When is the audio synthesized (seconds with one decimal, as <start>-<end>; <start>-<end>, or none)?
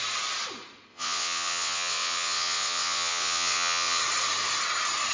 0.9-4.0